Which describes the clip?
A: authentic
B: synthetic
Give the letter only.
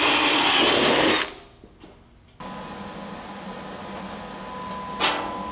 A